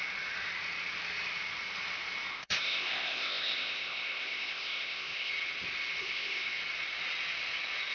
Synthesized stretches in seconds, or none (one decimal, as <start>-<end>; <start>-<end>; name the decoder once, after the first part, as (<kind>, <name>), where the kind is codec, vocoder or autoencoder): 2.3-5.3 (codec, ZipCodec); 6.0-6.6